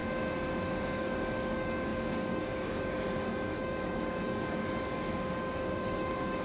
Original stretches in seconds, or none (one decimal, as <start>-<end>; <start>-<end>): 0.0-0.7